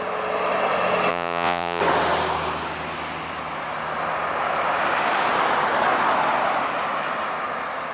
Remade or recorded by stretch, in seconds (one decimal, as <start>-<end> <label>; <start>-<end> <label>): 0.0-1.1 recorded; 1.1-1.8 remade; 1.8-7.9 recorded